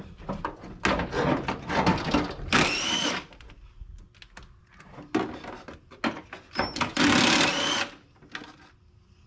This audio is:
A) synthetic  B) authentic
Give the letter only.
B